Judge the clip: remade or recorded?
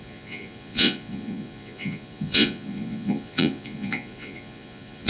remade